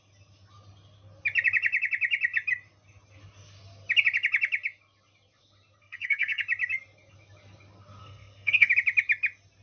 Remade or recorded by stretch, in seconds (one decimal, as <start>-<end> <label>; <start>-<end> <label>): 0.0-5.8 recorded; 5.8-6.4 remade; 6.4-8.0 recorded; 8.0-8.7 remade; 8.7-9.6 recorded

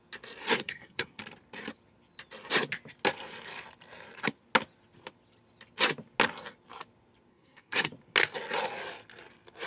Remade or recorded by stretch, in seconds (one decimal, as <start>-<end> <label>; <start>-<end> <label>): 0.0-0.4 recorded; 0.4-1.2 remade; 1.2-7.3 recorded; 7.3-7.9 remade; 7.9-9.7 recorded

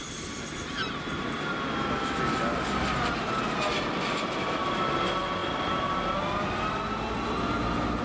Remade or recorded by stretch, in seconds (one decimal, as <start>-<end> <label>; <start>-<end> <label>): 0.0-8.0 recorded